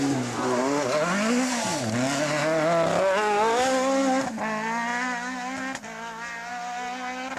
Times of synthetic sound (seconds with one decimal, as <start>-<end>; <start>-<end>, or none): none